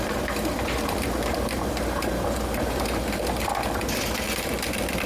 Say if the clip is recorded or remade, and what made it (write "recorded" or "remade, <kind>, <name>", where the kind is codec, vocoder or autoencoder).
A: remade, vocoder, BigVGAN v2